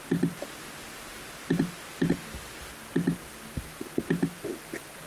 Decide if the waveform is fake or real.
real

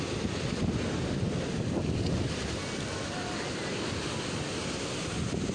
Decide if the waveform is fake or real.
real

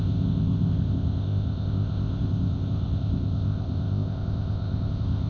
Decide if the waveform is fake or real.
fake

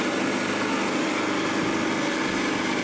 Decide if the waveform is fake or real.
real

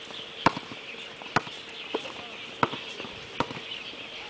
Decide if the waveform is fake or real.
real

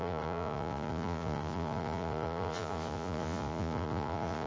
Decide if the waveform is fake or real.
fake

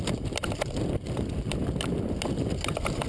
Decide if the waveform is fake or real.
real